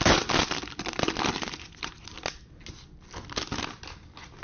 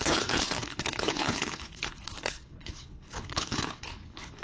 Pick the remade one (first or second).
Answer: second